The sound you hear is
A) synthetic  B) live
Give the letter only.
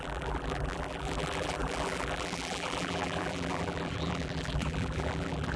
A